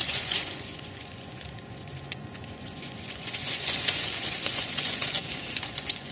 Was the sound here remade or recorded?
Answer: remade